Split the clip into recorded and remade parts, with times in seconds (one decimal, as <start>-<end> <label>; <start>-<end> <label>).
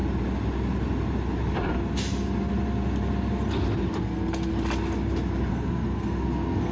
0.0-4.0 recorded; 4.0-4.5 remade; 4.5-5.5 recorded; 5.5-6.7 remade